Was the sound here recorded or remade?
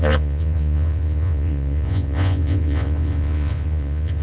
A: remade